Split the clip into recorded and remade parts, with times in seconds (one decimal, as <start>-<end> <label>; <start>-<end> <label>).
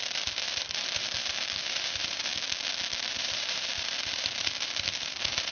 0.0-2.3 remade; 2.3-3.1 recorded; 3.1-5.5 remade